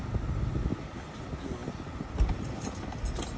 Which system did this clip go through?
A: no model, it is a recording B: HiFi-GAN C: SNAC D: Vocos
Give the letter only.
A